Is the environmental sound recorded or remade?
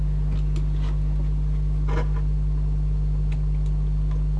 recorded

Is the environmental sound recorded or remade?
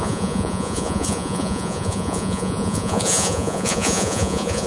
remade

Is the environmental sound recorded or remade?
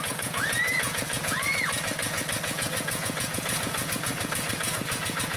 remade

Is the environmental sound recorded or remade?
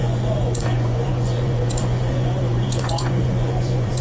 remade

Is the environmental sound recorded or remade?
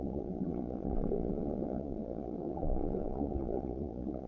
remade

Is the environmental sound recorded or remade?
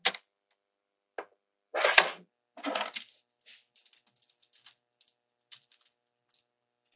recorded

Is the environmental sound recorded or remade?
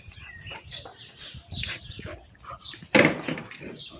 recorded